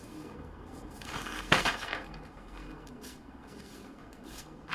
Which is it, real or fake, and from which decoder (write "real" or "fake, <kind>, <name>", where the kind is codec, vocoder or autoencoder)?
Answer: fake, codec, SNAC